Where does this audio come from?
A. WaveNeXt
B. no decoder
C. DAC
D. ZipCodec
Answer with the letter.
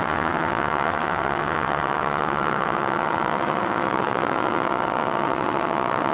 A